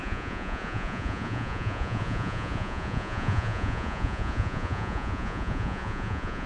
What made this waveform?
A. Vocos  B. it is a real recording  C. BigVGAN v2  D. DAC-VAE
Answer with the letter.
A